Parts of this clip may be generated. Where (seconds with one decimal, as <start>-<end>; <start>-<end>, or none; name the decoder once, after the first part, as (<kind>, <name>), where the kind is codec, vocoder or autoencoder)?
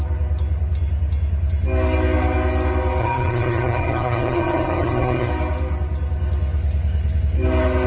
3.0-5.3 (vocoder, HiFi-GAN)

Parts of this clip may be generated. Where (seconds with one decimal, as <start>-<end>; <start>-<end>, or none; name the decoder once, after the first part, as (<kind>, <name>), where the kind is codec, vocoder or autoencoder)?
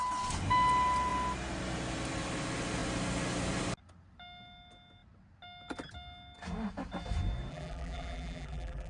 7.5-8.9 (vocoder, BigVGAN v2)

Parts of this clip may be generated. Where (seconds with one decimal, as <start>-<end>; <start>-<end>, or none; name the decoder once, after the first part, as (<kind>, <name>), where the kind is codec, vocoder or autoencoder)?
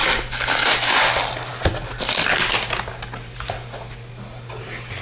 none